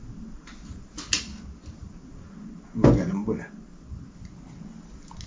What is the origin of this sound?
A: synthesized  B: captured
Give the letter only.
B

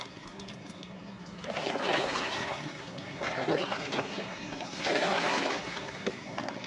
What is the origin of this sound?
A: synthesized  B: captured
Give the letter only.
A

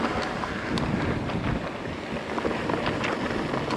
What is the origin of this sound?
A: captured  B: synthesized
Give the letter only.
A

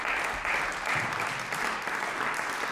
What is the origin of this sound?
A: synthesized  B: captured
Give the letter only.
B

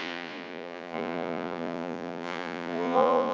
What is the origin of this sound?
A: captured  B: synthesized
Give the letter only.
B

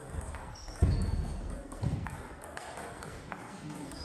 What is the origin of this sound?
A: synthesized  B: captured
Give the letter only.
A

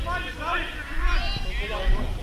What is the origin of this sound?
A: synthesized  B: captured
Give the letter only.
B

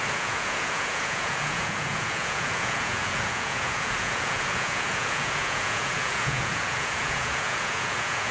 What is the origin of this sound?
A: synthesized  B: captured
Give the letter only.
A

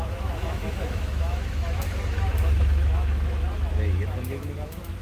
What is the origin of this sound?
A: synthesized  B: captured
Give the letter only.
A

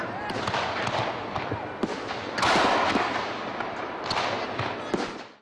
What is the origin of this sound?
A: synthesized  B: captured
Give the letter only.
B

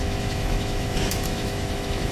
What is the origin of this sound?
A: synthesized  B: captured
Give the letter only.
A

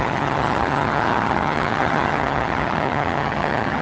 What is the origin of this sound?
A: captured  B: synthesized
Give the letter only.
B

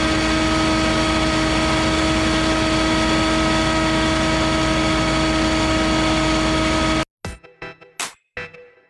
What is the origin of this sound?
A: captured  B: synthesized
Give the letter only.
A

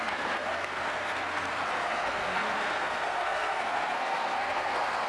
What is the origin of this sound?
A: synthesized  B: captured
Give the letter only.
A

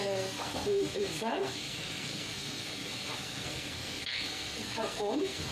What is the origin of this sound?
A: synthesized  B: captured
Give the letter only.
A